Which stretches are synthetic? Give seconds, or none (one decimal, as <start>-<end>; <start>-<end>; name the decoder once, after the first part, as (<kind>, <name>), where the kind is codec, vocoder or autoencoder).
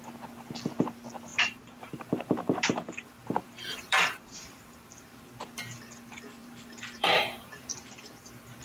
1.3-5.2 (vocoder, BigVGAN v2); 6.4-7.9